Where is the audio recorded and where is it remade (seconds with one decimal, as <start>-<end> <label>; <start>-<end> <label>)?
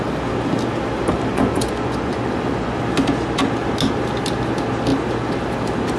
0.0-1.3 recorded; 1.3-2.8 remade; 2.8-6.0 recorded